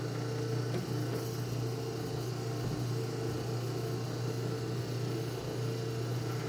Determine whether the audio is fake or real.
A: real